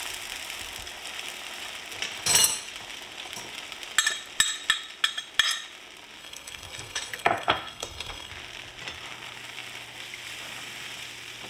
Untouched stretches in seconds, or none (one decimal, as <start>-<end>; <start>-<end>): 0.0-6.2; 8.3-11.5